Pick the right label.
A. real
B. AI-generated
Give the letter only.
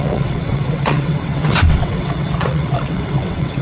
B